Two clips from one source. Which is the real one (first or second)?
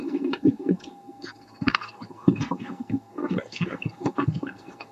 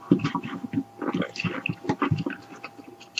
second